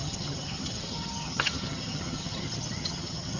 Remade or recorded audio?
remade